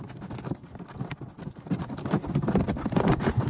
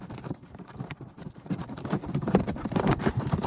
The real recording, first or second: first